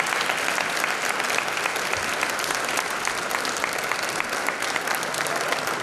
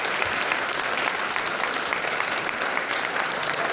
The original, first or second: first